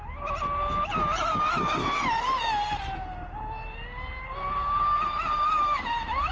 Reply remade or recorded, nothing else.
recorded